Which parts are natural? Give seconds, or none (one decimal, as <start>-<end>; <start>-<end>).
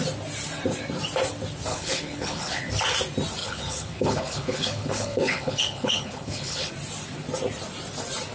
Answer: 0.0-1.7; 2.7-3.4; 6.7-8.3